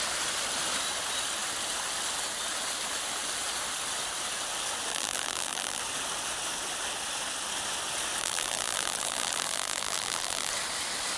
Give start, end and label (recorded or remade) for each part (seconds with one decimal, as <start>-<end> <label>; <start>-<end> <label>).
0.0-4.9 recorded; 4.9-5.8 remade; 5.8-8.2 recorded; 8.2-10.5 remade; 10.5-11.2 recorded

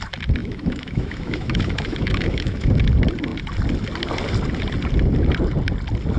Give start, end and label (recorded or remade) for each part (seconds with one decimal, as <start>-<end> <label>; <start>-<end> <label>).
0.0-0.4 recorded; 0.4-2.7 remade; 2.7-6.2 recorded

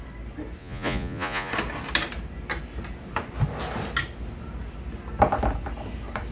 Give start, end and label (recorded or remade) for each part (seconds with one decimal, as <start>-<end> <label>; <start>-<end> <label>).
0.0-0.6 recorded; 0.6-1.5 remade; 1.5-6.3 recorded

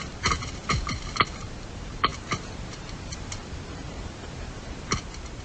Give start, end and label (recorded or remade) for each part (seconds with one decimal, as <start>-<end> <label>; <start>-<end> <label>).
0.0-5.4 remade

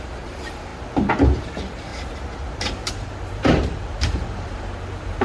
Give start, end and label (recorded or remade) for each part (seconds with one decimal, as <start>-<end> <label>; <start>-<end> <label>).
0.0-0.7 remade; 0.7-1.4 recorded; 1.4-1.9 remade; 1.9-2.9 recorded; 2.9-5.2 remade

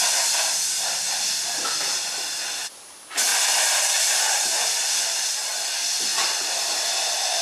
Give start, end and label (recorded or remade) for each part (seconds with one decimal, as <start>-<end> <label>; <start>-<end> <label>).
0.0-3.3 recorded; 3.3-4.9 remade; 4.9-7.4 recorded

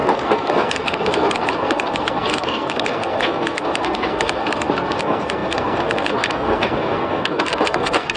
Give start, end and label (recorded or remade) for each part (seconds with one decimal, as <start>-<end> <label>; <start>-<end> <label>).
0.0-8.2 remade